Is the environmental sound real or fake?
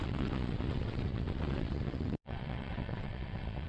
fake